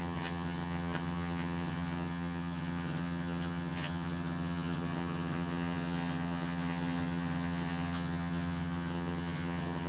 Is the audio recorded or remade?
remade